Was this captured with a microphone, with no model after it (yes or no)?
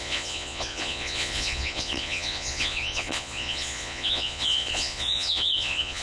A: no